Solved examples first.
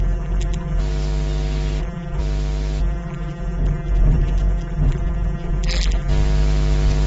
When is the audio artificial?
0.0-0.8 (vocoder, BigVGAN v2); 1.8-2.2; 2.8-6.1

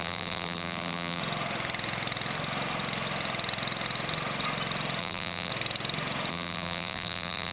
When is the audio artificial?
0.0-1.2 (vocoder, BigVGAN v2); 5.0-5.5; 6.3-7.5